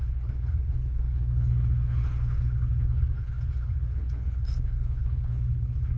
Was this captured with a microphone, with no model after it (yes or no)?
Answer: no